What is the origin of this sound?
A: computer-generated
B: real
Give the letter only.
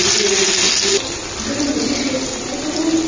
B